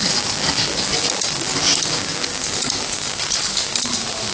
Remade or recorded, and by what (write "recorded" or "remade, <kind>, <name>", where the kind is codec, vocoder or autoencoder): recorded